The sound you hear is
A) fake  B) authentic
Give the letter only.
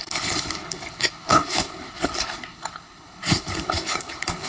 A